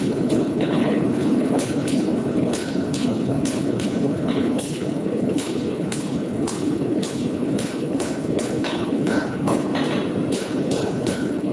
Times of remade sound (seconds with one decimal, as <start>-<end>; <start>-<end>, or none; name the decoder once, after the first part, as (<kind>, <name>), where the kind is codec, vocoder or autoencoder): 0.0-9.7 (codec, HILCodec); 10.3-11.5